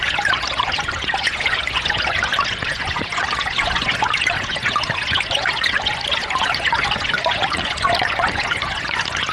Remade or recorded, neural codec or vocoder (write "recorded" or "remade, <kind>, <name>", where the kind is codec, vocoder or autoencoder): remade, vocoder, Vocos